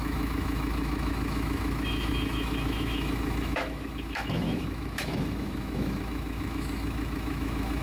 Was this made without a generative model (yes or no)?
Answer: no